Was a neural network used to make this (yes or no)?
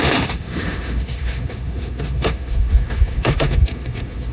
yes